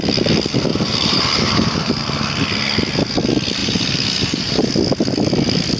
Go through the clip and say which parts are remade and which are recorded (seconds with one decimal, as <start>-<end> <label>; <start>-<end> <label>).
0.0-0.7 recorded; 0.7-1.9 remade; 1.9-3.6 recorded; 3.6-4.7 remade; 4.7-5.8 recorded